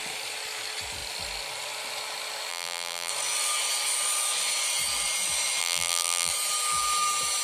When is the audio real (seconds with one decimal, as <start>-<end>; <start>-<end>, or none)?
0.0-2.5; 3.1-5.6; 6.3-7.4